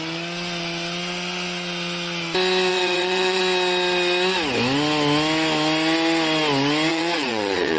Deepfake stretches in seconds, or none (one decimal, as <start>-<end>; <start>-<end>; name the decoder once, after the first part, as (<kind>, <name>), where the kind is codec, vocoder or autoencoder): 2.7-3.4 (vocoder, WaveNeXt); 6.9-7.8